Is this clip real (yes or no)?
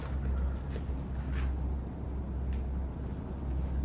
yes